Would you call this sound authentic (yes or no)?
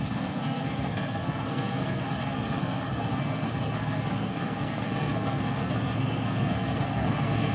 no